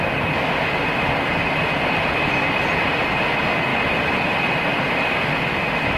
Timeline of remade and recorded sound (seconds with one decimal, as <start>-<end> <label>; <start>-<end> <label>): 0.0-6.0 recorded